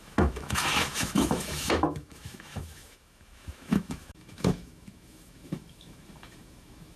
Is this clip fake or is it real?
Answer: fake